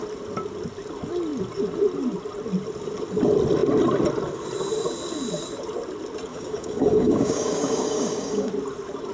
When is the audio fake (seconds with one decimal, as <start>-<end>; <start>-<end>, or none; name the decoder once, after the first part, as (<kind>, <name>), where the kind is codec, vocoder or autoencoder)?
6.3-8.5 (codec, DAC)